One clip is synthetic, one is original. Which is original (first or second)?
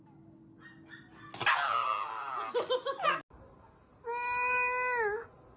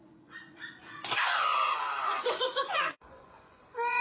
first